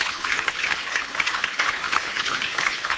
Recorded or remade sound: remade